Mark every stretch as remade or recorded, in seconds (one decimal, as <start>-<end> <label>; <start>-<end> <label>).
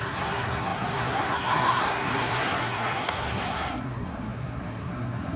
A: 0.0-5.4 remade